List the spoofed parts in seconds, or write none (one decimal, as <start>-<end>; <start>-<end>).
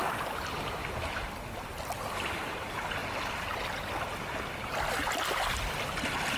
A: none